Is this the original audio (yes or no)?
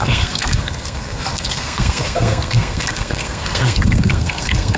no